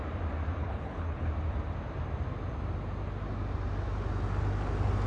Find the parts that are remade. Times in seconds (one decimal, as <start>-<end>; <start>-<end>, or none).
0.6-1.3